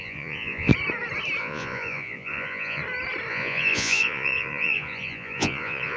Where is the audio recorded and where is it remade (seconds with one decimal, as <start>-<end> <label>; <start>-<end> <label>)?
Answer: 0.0-0.7 remade; 0.7-1.4 recorded; 1.4-2.8 remade; 2.8-3.3 recorded; 3.3-6.0 remade